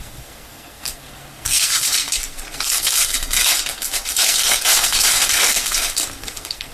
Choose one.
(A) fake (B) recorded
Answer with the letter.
A